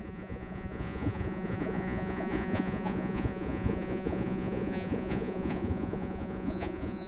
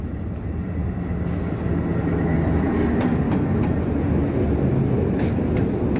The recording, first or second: second